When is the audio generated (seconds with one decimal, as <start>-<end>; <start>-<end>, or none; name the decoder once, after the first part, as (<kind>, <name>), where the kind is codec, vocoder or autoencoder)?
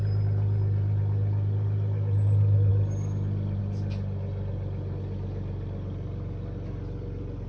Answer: none